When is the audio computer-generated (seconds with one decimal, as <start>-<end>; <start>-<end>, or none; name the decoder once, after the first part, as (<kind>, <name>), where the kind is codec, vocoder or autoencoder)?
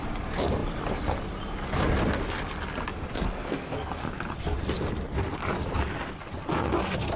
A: 3.3-3.9 (codec, SNAC)